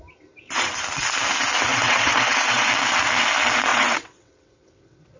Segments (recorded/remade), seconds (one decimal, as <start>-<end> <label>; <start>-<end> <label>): 0.0-1.7 recorded; 1.7-2.7 remade; 2.7-3.7 recorded; 3.7-5.2 remade